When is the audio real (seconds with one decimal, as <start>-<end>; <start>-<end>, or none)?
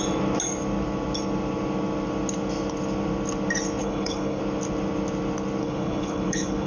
0.0-3.8; 4.4-5.6